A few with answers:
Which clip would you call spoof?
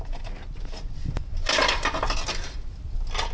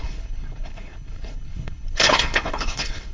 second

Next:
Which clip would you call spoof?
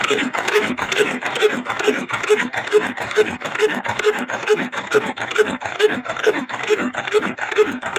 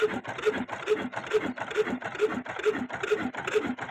first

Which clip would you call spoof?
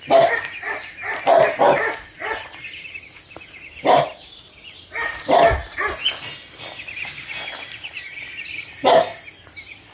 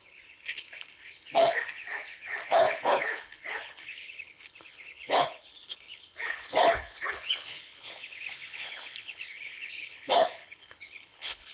second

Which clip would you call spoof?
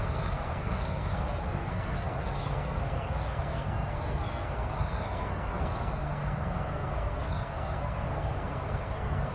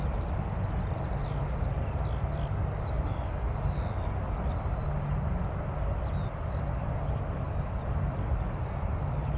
first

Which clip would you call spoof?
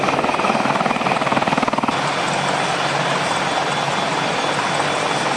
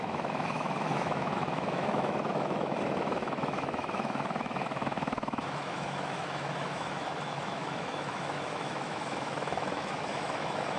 second